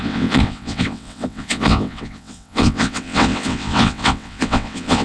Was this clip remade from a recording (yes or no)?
yes